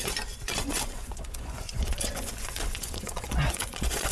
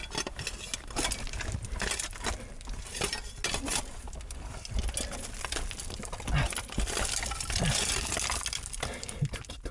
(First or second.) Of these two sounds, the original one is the second